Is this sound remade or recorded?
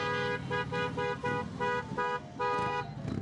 recorded